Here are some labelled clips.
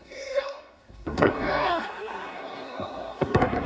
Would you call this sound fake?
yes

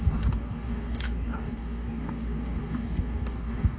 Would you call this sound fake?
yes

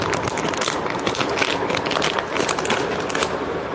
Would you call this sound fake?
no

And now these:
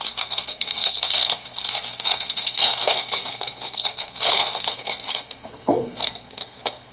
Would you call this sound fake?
yes